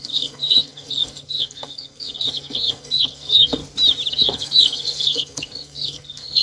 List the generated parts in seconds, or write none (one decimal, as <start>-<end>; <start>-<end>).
0.0-3.6; 4.1-6.4